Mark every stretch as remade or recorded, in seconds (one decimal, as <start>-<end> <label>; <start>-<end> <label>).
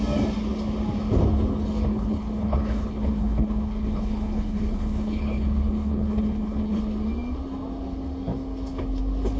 0.0-1.9 recorded; 1.9-6.8 remade; 6.8-9.4 recorded